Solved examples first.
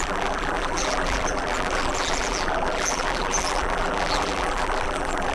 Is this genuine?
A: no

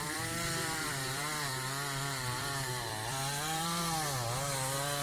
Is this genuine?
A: no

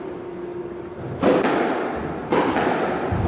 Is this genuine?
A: yes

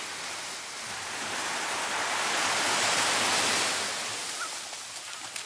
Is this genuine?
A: yes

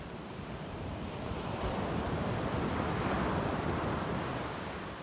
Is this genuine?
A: no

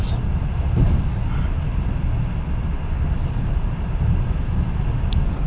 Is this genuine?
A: yes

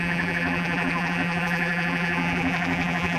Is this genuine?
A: no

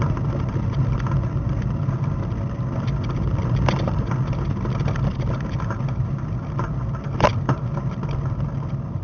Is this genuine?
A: yes